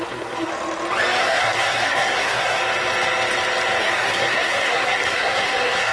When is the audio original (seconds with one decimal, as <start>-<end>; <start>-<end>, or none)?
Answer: 0.5-1.2; 2.6-3.8

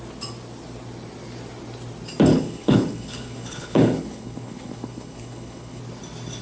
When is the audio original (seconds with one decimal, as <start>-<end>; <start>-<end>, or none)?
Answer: 0.0-2.3; 5.8-6.4

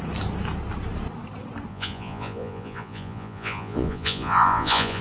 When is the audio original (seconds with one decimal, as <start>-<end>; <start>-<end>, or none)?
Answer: 0.0-1.7

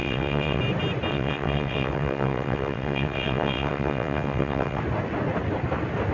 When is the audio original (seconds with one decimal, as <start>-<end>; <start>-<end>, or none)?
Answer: 0.6-1.1; 4.8-6.1